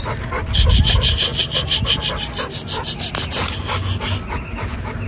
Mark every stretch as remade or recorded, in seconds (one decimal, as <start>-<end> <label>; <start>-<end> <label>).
0.0-5.1 recorded